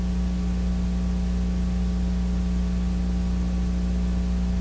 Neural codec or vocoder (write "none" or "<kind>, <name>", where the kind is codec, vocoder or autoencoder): none